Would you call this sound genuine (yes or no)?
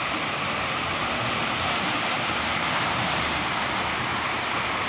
no